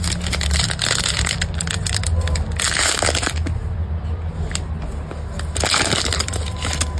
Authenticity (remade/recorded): recorded